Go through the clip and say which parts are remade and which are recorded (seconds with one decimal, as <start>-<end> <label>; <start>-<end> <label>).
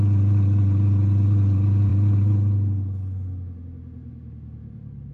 0.0-5.1 recorded